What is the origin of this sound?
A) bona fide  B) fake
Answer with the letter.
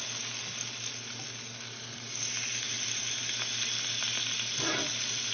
A